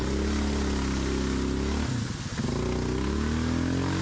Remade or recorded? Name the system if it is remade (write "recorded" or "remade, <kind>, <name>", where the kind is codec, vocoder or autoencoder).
recorded